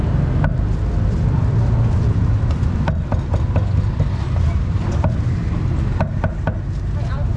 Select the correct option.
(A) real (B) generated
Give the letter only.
A